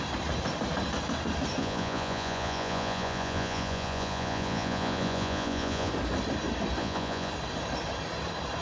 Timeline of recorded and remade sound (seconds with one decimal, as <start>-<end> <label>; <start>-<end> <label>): 0.0-1.6 recorded; 1.6-5.9 remade; 5.9-6.8 recorded; 6.8-7.3 remade; 7.3-8.6 recorded